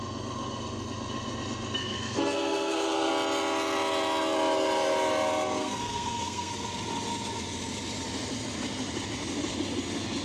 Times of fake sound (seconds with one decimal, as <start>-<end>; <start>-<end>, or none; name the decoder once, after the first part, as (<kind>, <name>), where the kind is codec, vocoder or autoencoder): 1.8-3.1 (codec, SNAC); 5.6-6.5